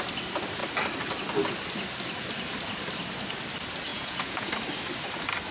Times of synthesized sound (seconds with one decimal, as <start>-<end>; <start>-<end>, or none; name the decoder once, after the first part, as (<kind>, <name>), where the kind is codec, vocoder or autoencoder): 3.9-4.5 (vocoder, Vocos)